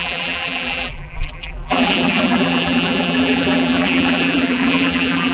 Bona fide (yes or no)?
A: no